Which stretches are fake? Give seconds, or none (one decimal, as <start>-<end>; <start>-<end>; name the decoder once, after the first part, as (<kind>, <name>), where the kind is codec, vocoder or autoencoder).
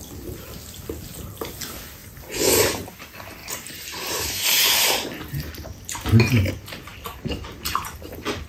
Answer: 3.4-6.5 (vocoder, BigVGAN v2)